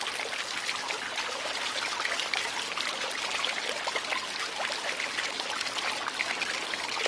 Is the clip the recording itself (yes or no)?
yes